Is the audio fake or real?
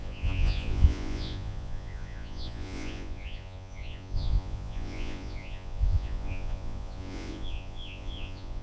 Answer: fake